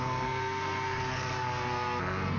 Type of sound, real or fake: fake